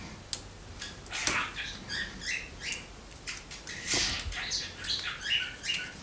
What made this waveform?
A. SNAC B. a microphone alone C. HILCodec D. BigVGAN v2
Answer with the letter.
B